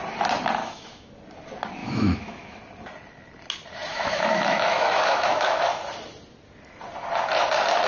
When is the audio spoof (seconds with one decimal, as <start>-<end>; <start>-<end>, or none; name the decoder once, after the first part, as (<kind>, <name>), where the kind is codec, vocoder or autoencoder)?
0.6-1.1 (autoencoder, DAC-VAE); 1.8-2.6; 3.9-5.8